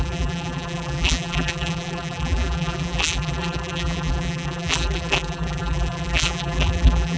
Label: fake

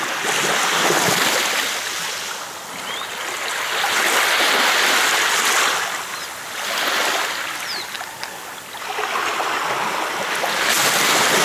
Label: real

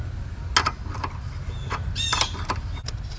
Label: real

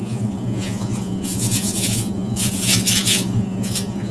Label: fake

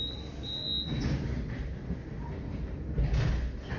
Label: real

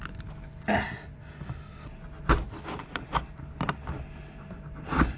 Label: real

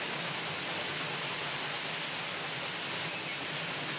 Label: real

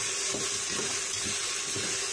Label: real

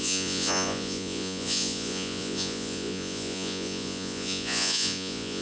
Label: fake